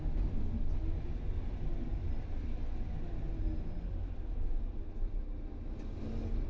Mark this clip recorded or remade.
recorded